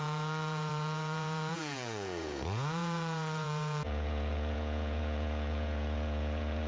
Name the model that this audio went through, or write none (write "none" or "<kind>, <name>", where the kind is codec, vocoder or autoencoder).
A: vocoder, Vocos